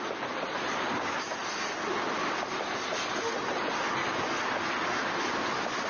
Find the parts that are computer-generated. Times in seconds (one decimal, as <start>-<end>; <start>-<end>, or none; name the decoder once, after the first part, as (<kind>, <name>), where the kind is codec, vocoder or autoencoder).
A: 0.7-1.3 (codec, DAC)